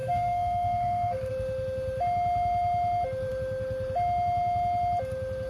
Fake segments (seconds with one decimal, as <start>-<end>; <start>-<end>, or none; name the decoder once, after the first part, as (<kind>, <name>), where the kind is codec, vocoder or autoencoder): 0.0-1.3 (codec, SNAC)